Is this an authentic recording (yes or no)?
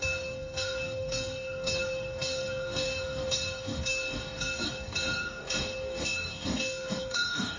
no